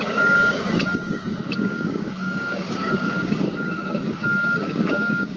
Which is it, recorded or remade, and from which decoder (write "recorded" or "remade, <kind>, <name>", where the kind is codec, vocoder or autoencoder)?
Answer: remade, codec, DAC